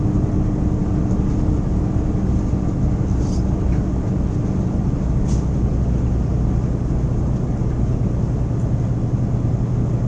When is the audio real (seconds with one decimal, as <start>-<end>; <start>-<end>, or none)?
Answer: 0.0-10.1